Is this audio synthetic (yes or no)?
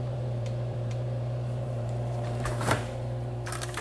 yes